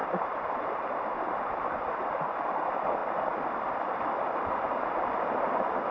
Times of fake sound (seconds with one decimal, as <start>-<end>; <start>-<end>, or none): 0.0-1.0